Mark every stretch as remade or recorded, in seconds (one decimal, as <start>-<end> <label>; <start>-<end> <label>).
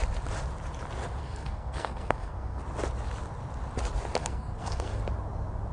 0.0-1.2 recorded; 1.2-2.6 remade; 2.6-4.2 recorded; 4.2-5.0 remade; 5.0-5.7 recorded